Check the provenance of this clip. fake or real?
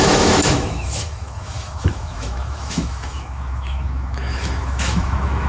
fake